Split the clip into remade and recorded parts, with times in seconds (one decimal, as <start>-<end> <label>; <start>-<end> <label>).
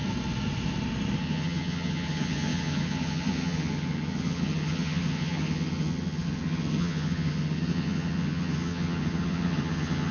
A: 0.0-1.2 recorded; 1.2-10.1 remade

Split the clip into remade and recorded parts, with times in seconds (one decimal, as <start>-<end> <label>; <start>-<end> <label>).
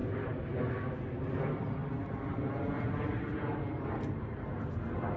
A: 0.0-5.2 recorded